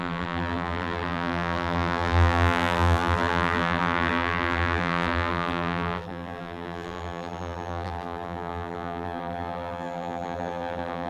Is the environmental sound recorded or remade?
remade